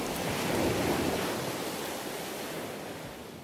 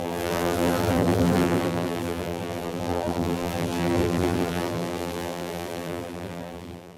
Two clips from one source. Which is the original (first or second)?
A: first